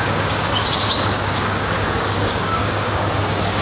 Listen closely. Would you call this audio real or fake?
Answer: fake